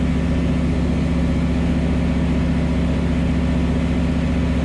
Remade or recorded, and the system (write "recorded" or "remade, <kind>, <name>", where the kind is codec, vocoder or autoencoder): recorded